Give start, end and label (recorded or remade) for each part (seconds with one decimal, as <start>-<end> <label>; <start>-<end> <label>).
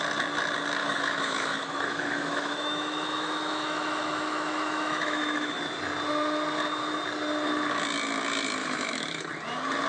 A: 0.0-0.8 recorded; 0.8-5.6 remade; 5.6-8.6 recorded; 8.6-9.2 remade; 9.2-9.9 recorded